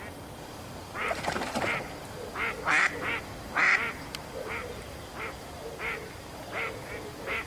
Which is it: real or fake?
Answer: real